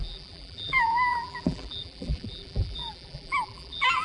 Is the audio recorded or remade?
remade